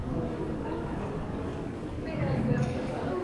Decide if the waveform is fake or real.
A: fake